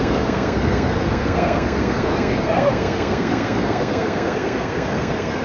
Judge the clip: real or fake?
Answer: fake